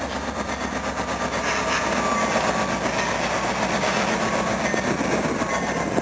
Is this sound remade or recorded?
recorded